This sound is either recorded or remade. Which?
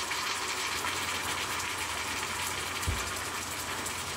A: recorded